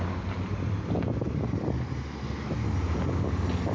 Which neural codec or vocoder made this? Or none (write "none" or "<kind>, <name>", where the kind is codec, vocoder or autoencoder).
none